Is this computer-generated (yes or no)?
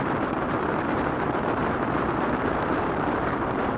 yes